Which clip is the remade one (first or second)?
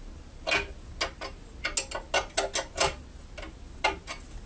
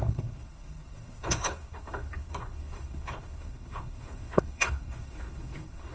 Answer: second